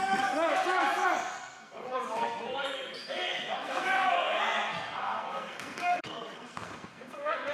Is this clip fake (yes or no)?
yes